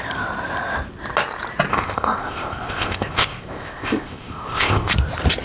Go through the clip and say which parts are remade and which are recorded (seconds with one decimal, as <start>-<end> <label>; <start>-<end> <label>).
0.0-1.7 recorded; 1.7-4.9 remade; 4.9-5.4 recorded